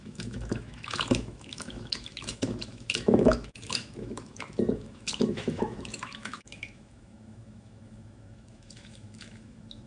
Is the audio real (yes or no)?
no